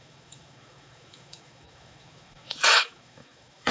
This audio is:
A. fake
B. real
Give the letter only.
A